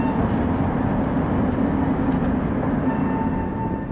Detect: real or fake real